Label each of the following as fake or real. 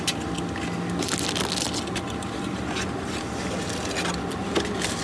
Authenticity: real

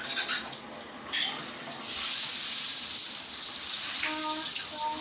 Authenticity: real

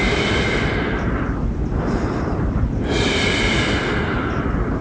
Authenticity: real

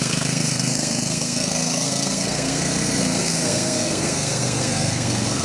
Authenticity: fake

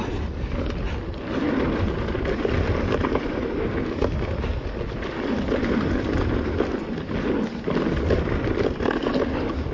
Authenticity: real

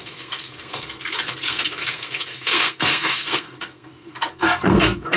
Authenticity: fake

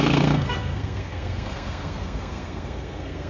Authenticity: fake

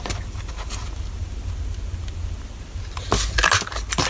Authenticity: real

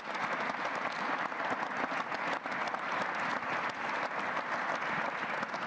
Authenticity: real